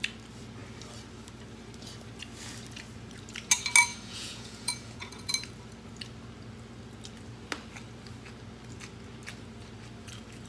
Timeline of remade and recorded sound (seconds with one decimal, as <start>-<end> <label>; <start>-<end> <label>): 0.0-3.9 recorded; 3.9-5.3 remade; 5.3-10.5 recorded